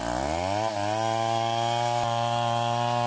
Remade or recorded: recorded